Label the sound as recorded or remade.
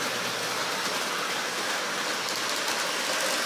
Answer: recorded